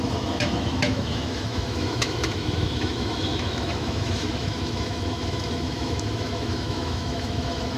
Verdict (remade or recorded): remade